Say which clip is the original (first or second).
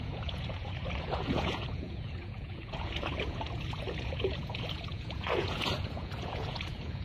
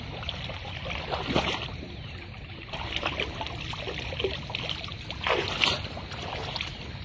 second